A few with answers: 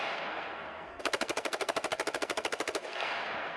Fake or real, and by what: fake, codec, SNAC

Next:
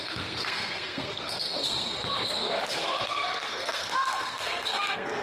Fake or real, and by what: fake, codec, SNAC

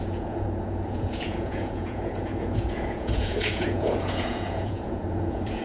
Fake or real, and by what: fake, vocoder, Vocos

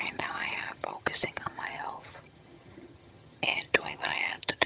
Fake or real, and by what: fake, vocoder, HiFi-GAN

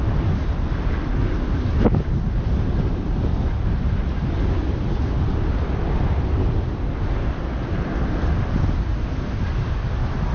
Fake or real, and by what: real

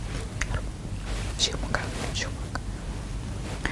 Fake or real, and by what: real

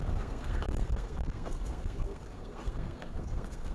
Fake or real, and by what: fake, codec, SNAC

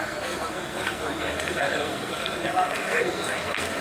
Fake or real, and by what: fake, codec, SNAC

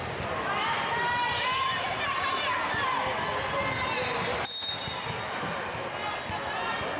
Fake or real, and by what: real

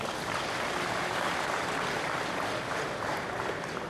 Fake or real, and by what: real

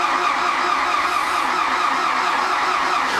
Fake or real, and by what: real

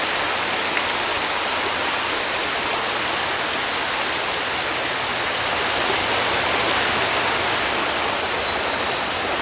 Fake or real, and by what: real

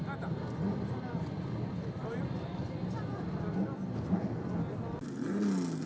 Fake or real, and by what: real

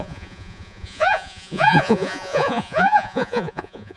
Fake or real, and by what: fake, vocoder, Vocos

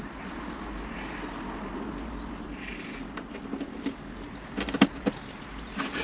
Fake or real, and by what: real